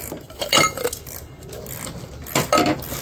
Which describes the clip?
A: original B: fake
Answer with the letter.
A